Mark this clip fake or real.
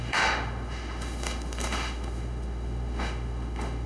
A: fake